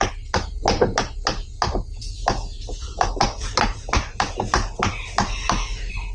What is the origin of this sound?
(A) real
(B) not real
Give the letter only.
A